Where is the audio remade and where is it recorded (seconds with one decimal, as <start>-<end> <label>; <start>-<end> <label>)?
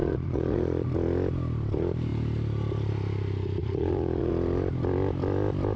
0.0-0.9 remade; 0.9-3.6 recorded; 3.6-4.3 remade; 4.3-5.8 recorded